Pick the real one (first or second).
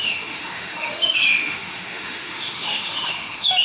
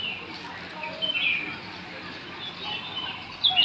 second